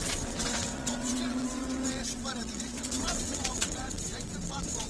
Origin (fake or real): fake